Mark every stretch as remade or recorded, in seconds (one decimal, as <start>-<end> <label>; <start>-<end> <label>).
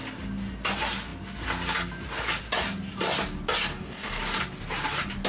0.0-3.7 recorded; 3.7-4.2 remade; 4.2-5.3 recorded